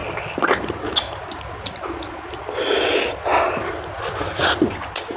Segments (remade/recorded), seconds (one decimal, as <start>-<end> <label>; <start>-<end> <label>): 0.0-5.2 recorded